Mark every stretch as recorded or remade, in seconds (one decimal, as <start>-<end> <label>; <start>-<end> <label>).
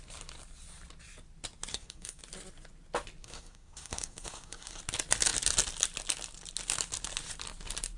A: 0.0-1.7 recorded; 1.7-2.2 remade; 2.2-3.2 recorded; 3.2-4.8 remade; 4.8-8.0 recorded